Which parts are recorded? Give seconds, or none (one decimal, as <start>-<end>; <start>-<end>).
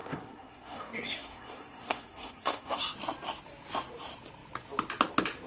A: 2.8-5.5